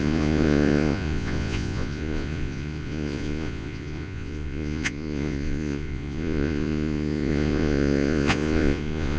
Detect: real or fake fake